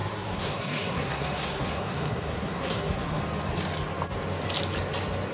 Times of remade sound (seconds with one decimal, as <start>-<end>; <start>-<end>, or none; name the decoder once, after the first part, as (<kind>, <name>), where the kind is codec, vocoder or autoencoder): 0.0-3.2 (codec, SNAC)